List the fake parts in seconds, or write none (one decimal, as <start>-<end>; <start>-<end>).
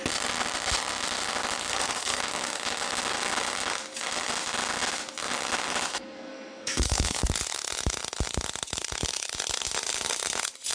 1.7-2.2; 5.9-7.2